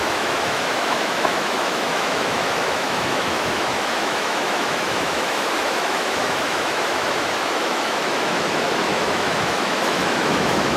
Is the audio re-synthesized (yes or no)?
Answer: yes